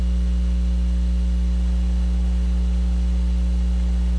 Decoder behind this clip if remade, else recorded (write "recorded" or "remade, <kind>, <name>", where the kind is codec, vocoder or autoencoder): recorded